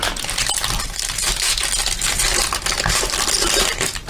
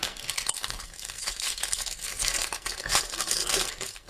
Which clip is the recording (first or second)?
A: first